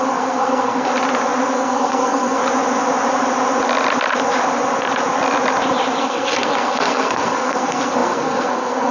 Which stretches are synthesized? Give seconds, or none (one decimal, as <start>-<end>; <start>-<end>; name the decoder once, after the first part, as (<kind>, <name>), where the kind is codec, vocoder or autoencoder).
0.0-0.9 (codec, SNAC); 1.5-2.4; 6.0-8.9